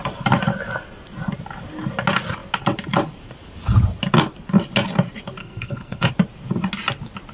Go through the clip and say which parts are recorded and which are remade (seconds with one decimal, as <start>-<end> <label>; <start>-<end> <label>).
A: 0.0-5.4 recorded; 5.4-6.1 remade; 6.1-7.3 recorded